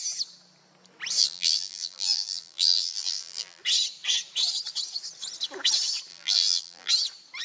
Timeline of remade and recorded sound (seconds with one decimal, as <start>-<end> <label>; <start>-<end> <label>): 0.0-1.2 recorded; 1.2-3.6 remade; 3.6-6.1 recorded; 6.1-6.9 remade; 6.9-7.4 recorded